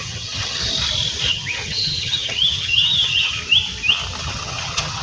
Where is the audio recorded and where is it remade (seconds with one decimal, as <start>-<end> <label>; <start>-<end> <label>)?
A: 0.0-0.6 remade; 0.6-1.3 recorded; 1.3-3.4 remade; 3.4-4.2 recorded; 4.2-5.0 remade